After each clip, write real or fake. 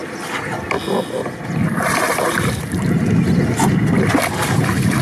real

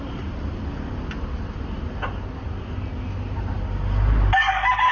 real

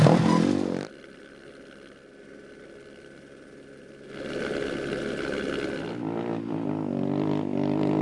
real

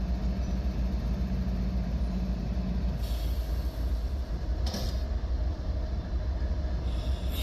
real